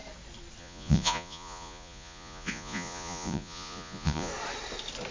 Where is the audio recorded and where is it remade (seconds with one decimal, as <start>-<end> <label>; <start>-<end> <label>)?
0.0-0.6 recorded; 0.6-4.3 remade; 4.3-5.1 recorded